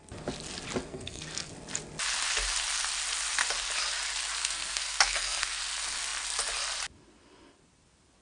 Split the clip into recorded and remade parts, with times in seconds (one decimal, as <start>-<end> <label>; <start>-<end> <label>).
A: 0.0-0.9 recorded; 0.9-1.5 remade; 1.5-4.4 recorded; 4.4-5.6 remade; 5.6-8.2 recorded